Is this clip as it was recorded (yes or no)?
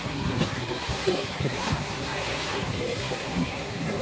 no